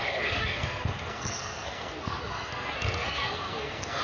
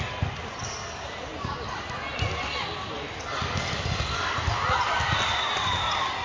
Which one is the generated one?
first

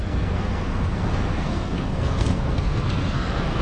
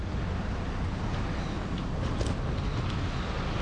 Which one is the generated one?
first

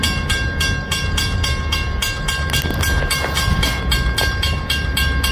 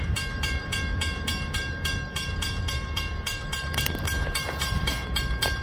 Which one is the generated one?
second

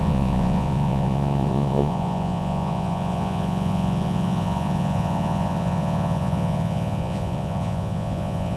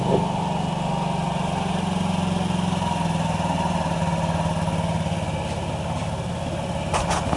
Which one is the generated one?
first